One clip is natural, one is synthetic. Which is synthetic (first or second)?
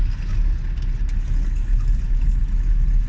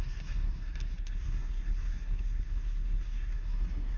second